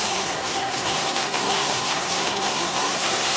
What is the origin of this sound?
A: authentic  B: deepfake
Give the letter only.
B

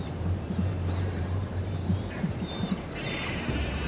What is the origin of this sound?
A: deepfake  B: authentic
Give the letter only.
B